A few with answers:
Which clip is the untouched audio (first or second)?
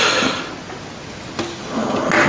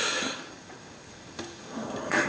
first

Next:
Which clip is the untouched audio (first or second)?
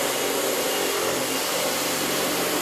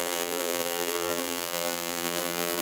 first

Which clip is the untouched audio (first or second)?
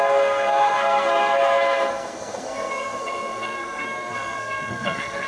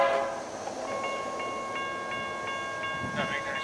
second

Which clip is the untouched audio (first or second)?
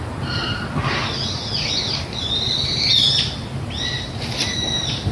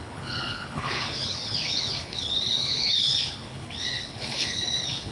first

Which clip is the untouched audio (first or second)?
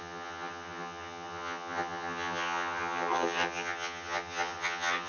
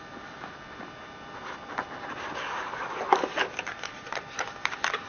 second